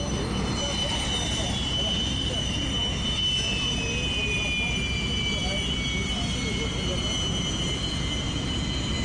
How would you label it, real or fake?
real